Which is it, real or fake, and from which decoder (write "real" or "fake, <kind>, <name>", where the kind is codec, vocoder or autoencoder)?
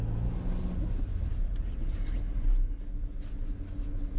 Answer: real